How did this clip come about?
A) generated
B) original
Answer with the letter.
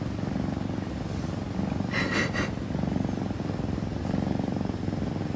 B